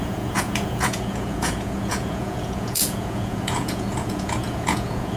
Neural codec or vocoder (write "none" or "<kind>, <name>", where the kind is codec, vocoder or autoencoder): vocoder, Vocos